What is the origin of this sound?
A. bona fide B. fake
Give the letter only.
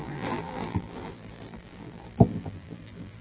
B